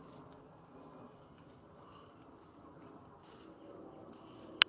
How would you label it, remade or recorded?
recorded